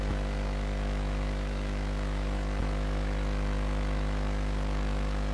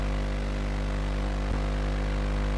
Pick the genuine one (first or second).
second